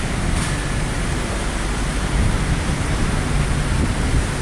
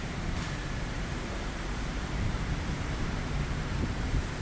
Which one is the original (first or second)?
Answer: first